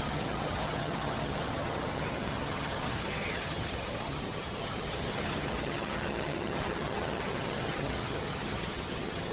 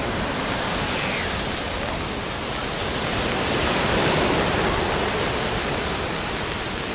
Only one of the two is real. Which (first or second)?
second